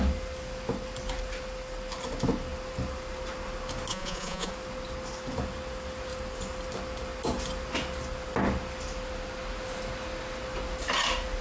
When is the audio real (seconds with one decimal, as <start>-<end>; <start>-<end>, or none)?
0.0-3.9; 4.5-11.4